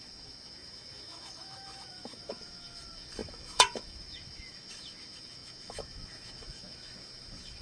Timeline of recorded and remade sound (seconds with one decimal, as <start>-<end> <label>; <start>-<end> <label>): 0.0-7.6 remade

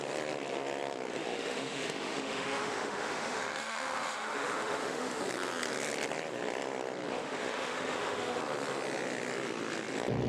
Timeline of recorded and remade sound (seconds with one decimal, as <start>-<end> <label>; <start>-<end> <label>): 0.0-1.1 recorded; 1.1-5.2 remade; 5.2-7.1 recorded; 7.1-8.4 remade; 8.4-10.3 recorded

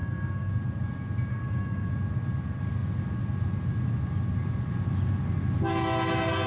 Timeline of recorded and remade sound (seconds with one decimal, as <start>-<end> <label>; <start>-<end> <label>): 0.0-0.5 remade; 0.5-1.3 recorded; 1.3-1.9 remade; 1.9-6.5 recorded

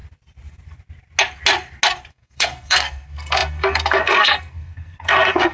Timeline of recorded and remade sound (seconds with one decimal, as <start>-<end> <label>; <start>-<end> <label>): 0.0-2.1 recorded; 2.1-5.5 remade

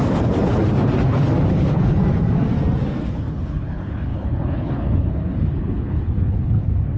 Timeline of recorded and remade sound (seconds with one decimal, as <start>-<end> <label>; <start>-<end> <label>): 0.0-0.6 remade; 0.6-1.5 recorded; 1.5-2.0 remade; 2.0-3.1 recorded; 3.1-7.0 remade

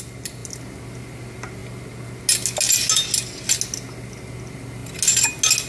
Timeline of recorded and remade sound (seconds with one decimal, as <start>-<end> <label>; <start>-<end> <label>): 0.0-5.7 recorded

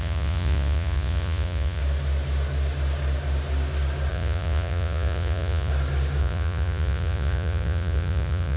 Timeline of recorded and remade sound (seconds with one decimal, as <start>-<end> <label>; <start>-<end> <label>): 0.0-1.8 remade; 1.8-4.1 recorded; 4.1-5.7 remade; 5.7-6.2 recorded; 6.2-8.6 remade